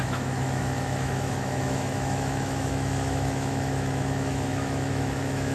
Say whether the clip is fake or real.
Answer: fake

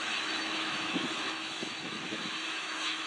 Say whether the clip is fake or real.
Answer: fake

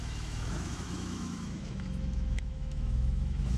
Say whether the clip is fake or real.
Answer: fake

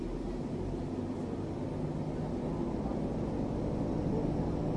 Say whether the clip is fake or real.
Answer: real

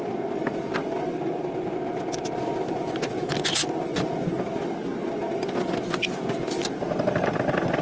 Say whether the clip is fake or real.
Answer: real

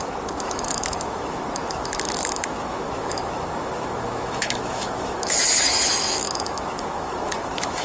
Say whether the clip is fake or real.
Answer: fake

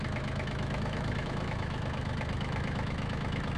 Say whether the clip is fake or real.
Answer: fake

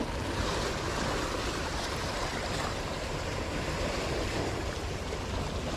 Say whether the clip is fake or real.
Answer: real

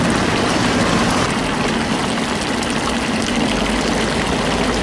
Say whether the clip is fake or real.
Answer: real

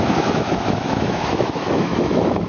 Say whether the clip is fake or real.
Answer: fake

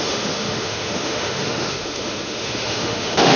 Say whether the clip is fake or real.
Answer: fake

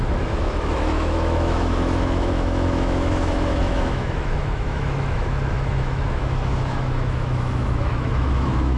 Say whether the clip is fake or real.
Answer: fake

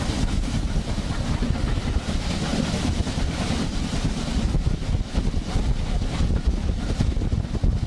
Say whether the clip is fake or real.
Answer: real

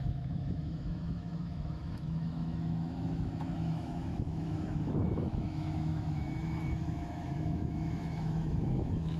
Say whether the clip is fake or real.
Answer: fake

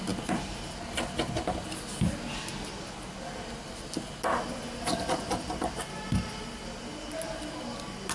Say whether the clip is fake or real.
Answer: real